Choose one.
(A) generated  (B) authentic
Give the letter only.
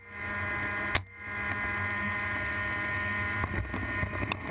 B